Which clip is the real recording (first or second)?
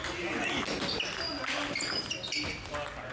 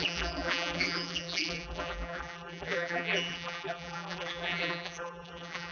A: first